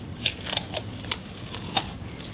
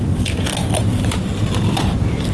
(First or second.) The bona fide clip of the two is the second